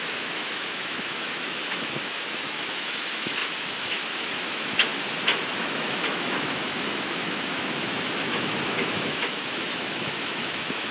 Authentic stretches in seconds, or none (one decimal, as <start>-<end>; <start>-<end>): 4.9-5.6